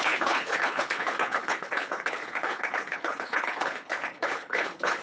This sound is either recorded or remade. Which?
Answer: remade